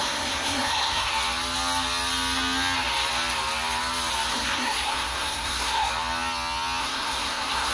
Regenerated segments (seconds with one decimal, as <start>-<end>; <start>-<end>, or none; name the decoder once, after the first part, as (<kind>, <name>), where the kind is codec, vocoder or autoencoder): 0.0-1.1 (codec, SNAC); 4.3-5.9; 6.8-7.7